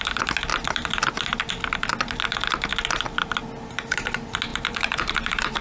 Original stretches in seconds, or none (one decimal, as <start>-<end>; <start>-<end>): 0.0-4.5